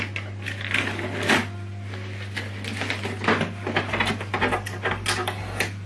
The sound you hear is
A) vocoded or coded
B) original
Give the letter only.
B